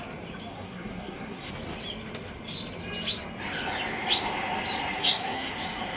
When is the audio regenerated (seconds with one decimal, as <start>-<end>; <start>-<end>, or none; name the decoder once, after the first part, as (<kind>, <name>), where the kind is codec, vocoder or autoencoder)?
0.5-1.5 (codec, SNAC); 5.0-5.5